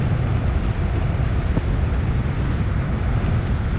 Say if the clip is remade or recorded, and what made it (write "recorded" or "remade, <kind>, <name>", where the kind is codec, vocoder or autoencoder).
recorded